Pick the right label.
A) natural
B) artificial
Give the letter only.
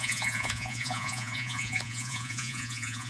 B